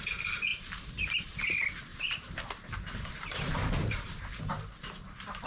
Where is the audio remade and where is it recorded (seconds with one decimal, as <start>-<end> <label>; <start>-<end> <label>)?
0.0-1.9 recorded; 1.9-5.5 remade